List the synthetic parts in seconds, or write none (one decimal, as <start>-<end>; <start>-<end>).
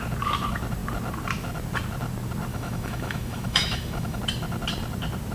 2.5-4.2